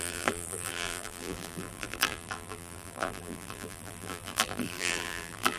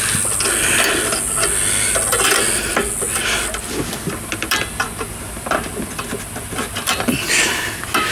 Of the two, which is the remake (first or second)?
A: first